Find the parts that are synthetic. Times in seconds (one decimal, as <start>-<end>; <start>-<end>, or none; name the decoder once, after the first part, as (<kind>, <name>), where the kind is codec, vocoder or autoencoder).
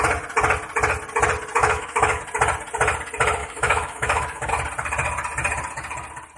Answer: 1.6-2.2 (autoencoder, DAC-VAE); 3.4-4.5